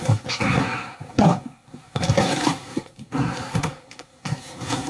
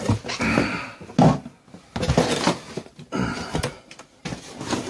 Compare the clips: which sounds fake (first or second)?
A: first